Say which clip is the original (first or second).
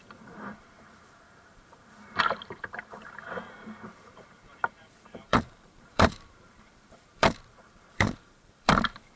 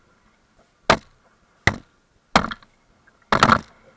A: second